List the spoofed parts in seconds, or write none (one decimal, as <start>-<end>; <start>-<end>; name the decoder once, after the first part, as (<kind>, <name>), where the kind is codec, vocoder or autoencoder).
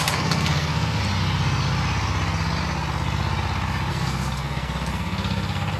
0.0-1.0 (codec, SNAC); 3.9-5.8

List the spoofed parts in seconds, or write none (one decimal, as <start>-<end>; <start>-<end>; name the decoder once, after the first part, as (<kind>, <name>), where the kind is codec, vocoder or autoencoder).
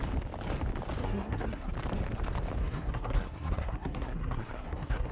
1.0-1.7 (codec, SNAC); 2.6-5.1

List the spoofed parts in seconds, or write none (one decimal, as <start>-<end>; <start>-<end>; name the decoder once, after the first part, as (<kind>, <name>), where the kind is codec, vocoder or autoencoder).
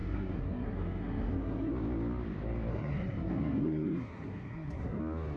0.0-1.7 (codec, SNAC); 2.7-5.0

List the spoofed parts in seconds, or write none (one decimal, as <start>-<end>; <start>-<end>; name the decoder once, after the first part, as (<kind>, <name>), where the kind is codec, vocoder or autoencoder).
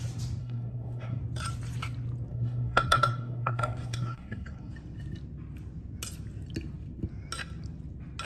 0.4-1.2 (codec, SNAC); 2.3-4.7